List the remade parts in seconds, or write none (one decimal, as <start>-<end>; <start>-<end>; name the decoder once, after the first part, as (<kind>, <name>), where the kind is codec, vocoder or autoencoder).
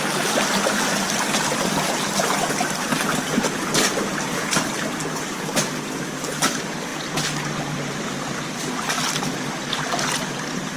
none